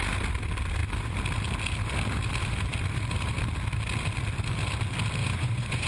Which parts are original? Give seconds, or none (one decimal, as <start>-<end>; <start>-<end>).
0.0-5.2